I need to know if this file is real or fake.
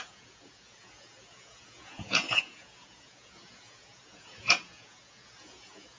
fake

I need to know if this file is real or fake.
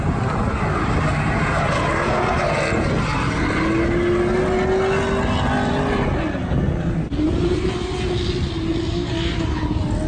real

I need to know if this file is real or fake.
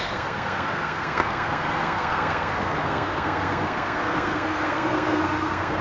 fake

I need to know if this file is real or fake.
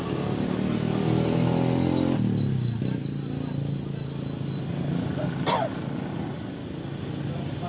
real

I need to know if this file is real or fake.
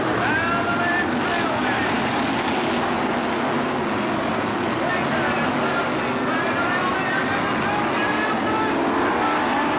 real